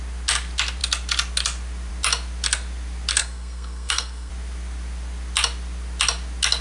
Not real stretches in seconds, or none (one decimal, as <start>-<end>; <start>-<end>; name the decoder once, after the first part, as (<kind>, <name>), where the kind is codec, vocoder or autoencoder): 3.2-4.3 (codec, SNAC)